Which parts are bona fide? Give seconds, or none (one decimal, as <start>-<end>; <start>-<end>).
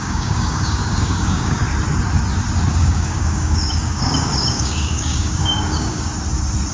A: 1.6-2.7; 6.1-6.7